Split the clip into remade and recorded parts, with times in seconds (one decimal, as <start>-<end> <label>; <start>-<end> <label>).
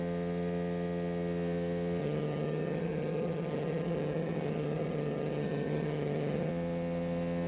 0.0-2.0 recorded; 2.0-6.5 remade; 6.5-7.5 recorded